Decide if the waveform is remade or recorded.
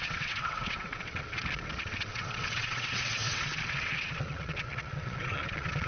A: remade